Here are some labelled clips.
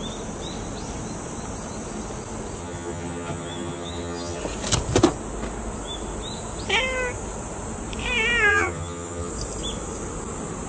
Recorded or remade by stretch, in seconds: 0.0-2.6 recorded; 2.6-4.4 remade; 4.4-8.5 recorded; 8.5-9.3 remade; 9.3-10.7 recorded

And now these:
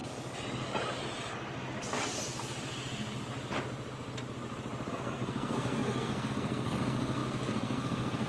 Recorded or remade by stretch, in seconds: 0.0-4.9 recorded; 4.9-8.3 remade